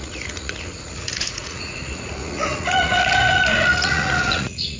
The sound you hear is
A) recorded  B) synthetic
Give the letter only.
B